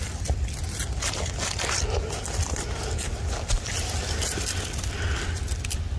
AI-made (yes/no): no